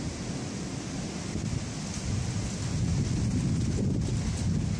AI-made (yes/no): no